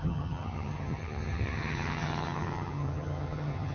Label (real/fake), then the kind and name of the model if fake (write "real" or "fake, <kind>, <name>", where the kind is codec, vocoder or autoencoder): fake, vocoder, HiFi-GAN